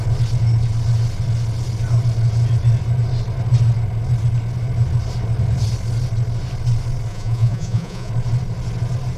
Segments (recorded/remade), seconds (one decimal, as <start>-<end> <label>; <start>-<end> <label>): 0.0-7.1 recorded; 7.1-8.1 remade; 8.1-9.2 recorded